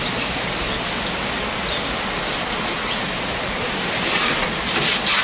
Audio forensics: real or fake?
real